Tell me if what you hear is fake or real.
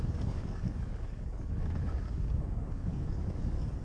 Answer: fake